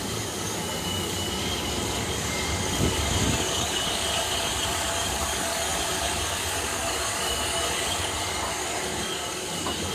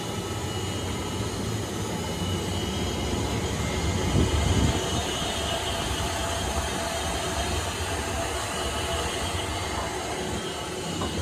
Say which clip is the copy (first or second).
first